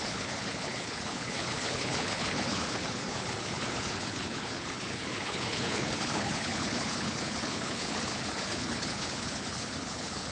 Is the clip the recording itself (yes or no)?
no